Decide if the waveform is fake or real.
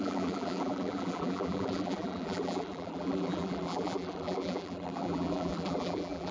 fake